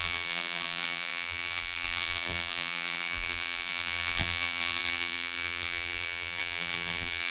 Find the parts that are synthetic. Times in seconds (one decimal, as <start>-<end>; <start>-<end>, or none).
0.0-7.3